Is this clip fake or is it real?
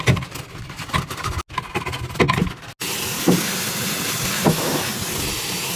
real